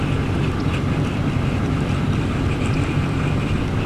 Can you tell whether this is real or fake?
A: real